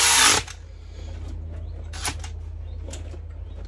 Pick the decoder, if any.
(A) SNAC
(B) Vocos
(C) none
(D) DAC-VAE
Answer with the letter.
C